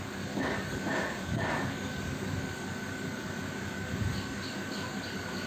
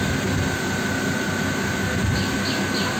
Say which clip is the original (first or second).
second